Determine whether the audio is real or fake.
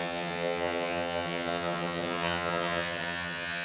fake